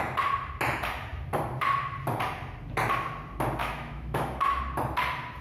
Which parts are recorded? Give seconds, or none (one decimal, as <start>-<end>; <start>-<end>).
0.0-3.6; 4.6-5.4

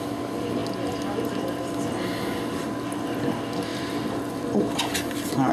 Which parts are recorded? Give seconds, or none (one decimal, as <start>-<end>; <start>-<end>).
0.0-3.7; 4.9-5.5

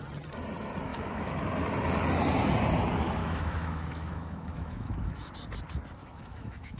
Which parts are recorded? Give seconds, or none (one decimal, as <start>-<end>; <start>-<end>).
0.0-0.9; 1.5-3.2; 5.3-6.0

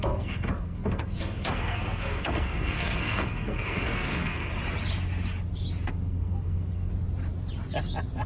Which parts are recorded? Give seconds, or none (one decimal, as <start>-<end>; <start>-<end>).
4.5-5.9; 6.9-8.3